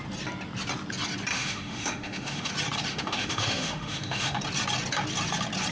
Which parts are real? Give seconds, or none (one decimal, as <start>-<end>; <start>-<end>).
0.0-1.3; 2.5-2.9; 4.4-5.7